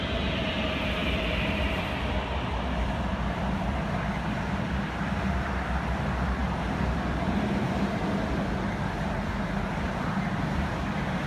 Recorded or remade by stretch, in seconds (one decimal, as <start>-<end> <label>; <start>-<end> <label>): 0.0-1.0 recorded; 1.0-5.0 remade; 5.0-6.4 recorded; 6.4-8.0 remade; 8.0-11.3 recorded